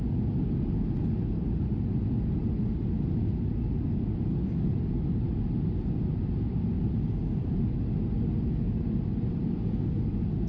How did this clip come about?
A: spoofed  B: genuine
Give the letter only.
B